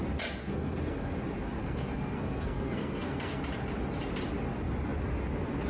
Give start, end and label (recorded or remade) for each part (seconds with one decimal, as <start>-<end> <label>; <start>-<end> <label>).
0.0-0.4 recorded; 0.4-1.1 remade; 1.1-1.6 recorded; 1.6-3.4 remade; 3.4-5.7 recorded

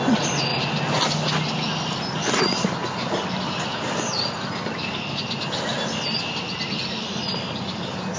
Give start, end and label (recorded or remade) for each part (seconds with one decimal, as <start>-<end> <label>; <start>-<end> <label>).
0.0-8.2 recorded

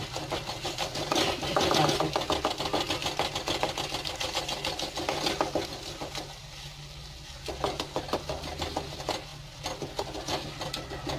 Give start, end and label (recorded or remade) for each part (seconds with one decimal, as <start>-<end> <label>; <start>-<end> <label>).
0.0-11.2 recorded

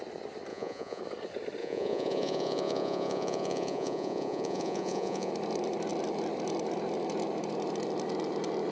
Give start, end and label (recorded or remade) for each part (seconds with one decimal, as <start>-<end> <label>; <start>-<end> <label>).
0.0-0.5 recorded; 0.5-1.0 remade; 1.0-1.6 recorded; 1.6-5.3 remade; 5.3-8.7 recorded

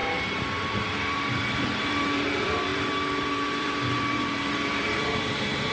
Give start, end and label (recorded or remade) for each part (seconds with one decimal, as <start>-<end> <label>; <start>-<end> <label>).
0.0-5.7 remade

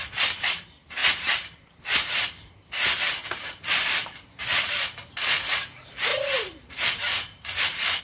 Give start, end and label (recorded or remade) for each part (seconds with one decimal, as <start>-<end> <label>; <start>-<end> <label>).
0.0-4.0 recorded; 4.0-4.7 remade; 4.7-6.1 recorded; 6.1-8.0 remade

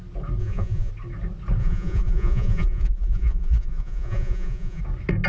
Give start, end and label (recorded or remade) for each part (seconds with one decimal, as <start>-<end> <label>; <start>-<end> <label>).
0.0-0.4 recorded; 0.4-0.9 remade; 0.9-1.6 recorded; 1.6-4.8 remade; 4.8-5.3 recorded

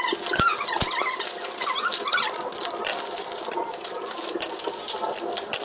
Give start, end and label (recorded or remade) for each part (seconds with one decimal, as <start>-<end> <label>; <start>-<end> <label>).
0.0-5.6 recorded